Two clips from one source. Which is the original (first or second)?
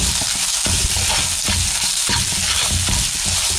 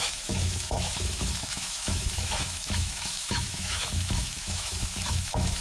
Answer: first